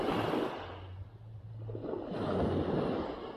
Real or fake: real